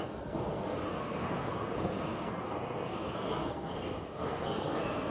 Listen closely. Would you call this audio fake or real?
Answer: fake